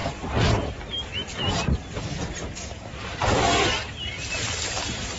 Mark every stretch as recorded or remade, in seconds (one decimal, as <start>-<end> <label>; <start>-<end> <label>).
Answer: 0.0-0.5 recorded; 0.5-1.3 remade; 1.3-4.4 recorded; 4.4-5.2 remade